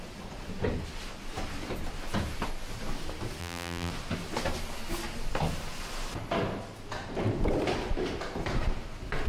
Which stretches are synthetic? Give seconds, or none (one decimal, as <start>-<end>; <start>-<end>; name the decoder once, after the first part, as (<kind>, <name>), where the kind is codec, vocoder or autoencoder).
3.4-3.9 (vocoder, BigVGAN v2)

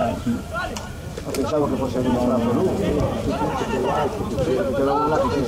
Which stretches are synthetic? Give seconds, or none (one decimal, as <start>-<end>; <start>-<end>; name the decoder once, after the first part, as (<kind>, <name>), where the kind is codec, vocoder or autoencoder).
0.0-2.7 (vocoder, BigVGAN v2); 3.8-4.6

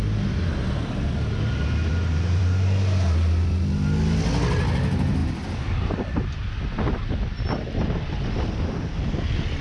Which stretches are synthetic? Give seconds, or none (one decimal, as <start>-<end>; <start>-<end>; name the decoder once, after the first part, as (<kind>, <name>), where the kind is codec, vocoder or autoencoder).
1.9-2.4 (vocoder, BigVGAN v2)

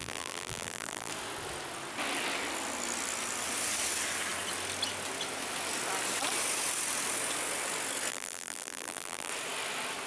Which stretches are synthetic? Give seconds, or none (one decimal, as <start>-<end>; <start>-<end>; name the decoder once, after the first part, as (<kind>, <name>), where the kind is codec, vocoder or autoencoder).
0.0-1.1 (vocoder, BigVGAN v2); 8.1-9.3

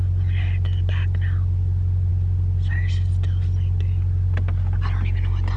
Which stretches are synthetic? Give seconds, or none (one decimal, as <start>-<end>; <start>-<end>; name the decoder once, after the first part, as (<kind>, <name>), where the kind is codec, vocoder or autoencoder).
none

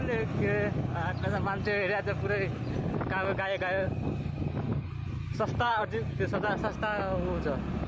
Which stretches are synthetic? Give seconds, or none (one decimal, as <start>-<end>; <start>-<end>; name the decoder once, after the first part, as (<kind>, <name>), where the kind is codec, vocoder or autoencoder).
4.7-5.9 (vocoder, BigVGAN v2)

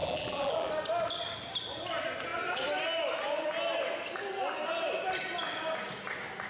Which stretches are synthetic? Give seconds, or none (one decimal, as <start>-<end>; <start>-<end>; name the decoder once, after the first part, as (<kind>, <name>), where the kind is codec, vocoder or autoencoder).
0.0-0.7 (vocoder, BigVGAN v2)

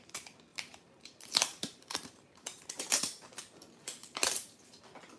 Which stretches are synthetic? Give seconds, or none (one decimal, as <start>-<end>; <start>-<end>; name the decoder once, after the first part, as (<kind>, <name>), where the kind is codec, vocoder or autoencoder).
0.5-3.4 (vocoder, BigVGAN v2); 4.0-4.8